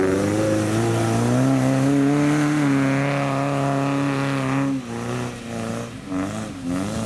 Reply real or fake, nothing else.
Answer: real